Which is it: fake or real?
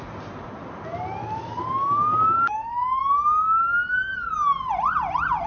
real